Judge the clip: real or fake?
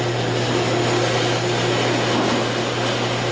real